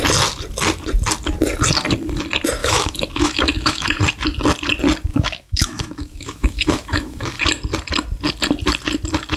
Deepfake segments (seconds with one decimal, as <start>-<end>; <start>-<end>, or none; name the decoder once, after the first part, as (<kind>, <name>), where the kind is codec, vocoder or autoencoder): 2.6-4.0 (autoencoder, DAC-VAE); 5.1-7.4